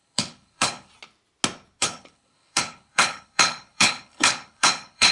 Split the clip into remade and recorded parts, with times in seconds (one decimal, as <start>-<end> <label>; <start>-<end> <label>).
0.0-0.9 remade; 0.9-1.8 recorded; 1.8-5.1 remade